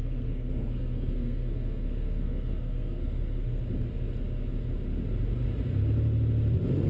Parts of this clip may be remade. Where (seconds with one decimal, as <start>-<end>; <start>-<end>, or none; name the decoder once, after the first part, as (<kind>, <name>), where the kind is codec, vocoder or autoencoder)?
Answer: 0.0-3.6 (codec, SNAC)